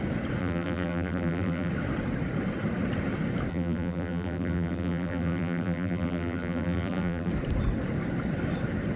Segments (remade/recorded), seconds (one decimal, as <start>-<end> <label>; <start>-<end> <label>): 0.0-0.4 recorded; 0.4-1.7 remade; 1.7-3.5 recorded; 3.5-7.3 remade; 7.3-9.0 recorded